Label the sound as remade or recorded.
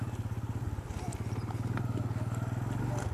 recorded